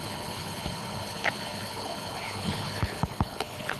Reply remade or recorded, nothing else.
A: remade